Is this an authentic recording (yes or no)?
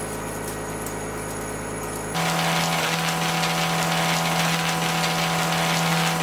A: yes